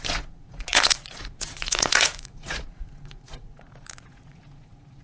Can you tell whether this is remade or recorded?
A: remade